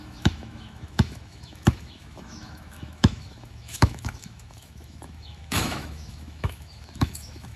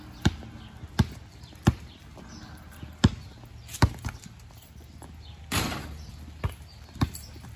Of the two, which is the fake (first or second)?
first